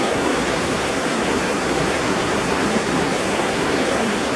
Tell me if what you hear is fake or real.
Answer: fake